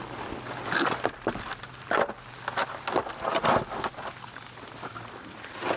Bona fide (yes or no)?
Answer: yes